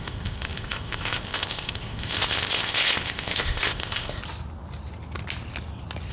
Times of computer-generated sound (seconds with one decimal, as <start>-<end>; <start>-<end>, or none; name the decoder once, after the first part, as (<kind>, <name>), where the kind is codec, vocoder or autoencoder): 0.0-4.2 (codec, ZipCodec)